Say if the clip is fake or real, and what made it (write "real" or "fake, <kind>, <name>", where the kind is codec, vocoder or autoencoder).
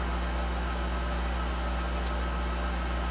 real